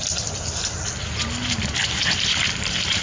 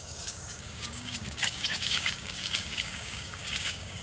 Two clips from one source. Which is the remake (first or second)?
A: second